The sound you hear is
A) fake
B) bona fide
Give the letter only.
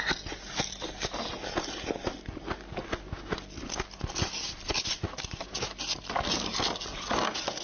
B